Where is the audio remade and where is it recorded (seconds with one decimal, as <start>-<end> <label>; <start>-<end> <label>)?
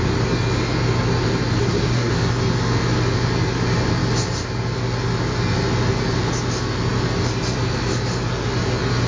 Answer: 0.0-1.6 recorded; 1.6-2.1 remade; 2.1-9.1 recorded